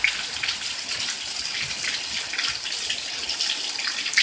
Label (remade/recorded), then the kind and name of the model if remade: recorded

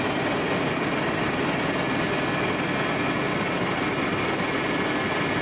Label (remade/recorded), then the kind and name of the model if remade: recorded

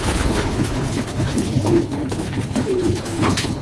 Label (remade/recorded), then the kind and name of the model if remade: remade, codec, HILCodec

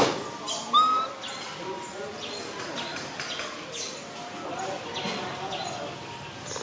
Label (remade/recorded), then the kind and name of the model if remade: recorded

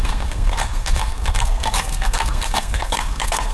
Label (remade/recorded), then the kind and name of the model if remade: remade, codec, SNAC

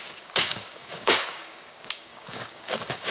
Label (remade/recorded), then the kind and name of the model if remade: remade, codec, DAC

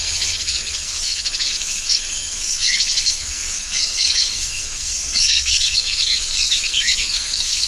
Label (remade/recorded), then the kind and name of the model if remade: remade, codec, SNAC